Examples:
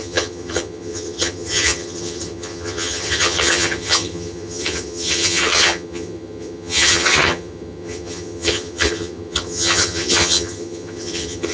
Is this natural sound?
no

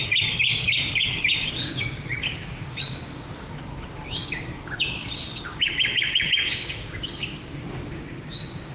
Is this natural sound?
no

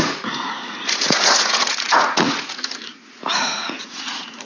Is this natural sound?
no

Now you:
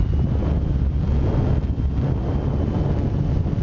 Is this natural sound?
yes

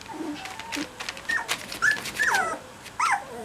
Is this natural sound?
yes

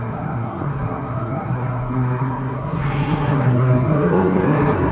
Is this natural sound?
no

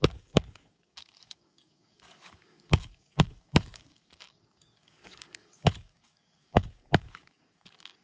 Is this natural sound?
no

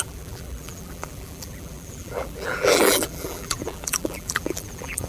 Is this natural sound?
no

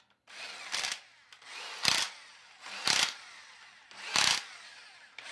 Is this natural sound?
yes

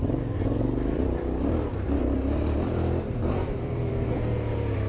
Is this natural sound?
no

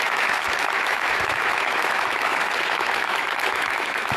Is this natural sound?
no